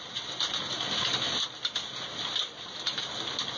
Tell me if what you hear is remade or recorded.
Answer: recorded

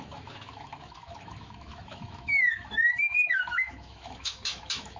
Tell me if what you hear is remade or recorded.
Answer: remade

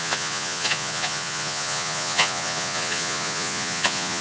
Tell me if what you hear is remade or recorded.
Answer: remade